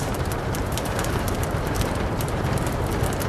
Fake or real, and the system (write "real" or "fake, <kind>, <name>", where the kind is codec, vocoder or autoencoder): fake, vocoder, BigVGAN v2